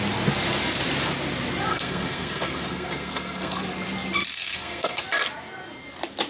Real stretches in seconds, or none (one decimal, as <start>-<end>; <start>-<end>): 0.0-1.7; 3.6-4.3; 5.0-6.3